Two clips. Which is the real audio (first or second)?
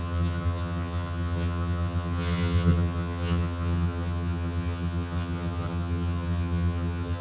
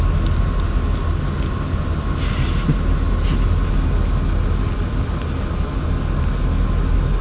second